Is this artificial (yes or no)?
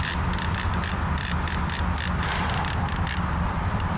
yes